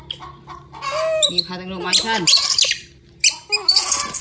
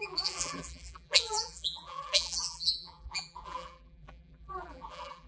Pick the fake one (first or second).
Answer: second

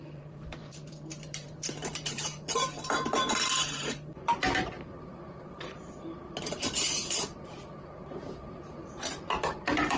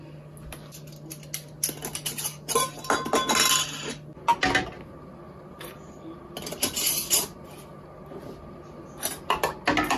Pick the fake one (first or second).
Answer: first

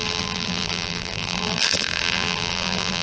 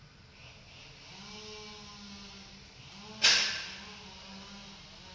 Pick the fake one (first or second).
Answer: first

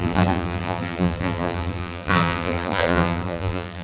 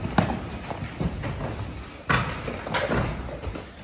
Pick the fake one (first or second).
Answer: first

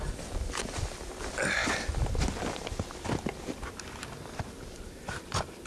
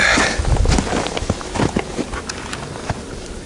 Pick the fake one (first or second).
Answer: first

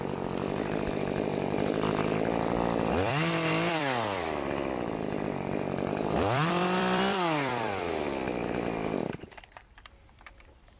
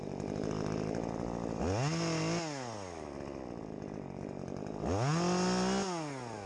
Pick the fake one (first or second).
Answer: first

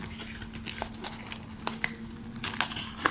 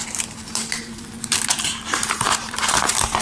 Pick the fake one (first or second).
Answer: second